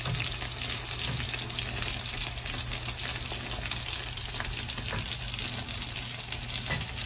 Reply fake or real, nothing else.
real